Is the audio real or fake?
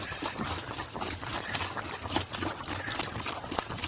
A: fake